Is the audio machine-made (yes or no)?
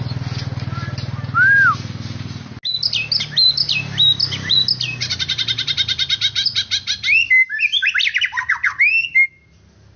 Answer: no